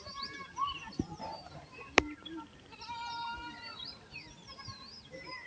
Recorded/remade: remade